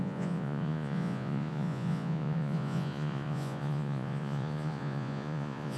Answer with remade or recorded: remade